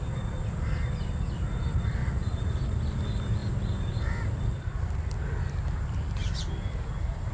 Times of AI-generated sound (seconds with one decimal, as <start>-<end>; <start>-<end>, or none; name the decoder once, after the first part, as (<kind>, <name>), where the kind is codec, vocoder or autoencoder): 2.0-2.6 (vocoder, BigVGAN v2); 6.2-7.3